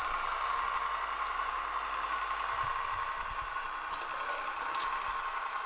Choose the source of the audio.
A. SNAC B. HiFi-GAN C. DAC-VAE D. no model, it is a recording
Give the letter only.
D